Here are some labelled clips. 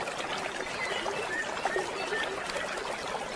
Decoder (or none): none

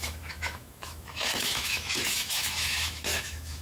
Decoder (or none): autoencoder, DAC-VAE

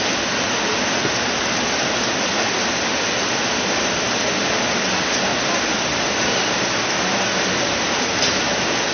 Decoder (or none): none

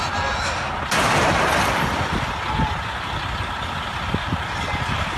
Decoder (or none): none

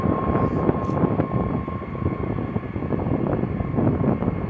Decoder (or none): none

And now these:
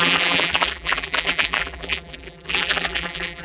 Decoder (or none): vocoder, BigVGAN v2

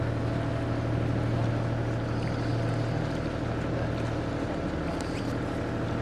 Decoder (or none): none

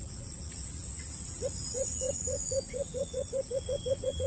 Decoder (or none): vocoder, Vocos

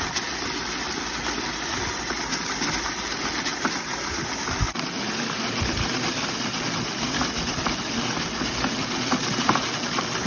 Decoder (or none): none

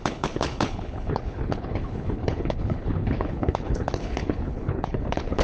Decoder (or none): codec, HILCodec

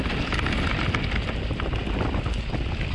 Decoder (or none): none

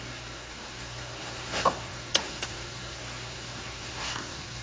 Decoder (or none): codec, SNAC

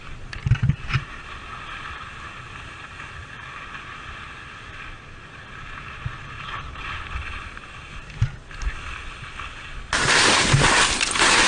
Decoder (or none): none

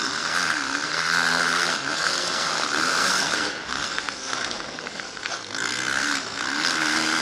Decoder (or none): codec, SNAC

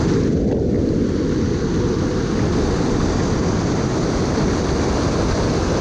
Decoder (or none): none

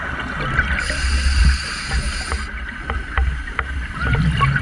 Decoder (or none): none